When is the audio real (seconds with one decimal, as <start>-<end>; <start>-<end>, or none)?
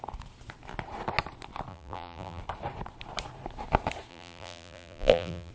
0.0-1.7; 2.4-4.1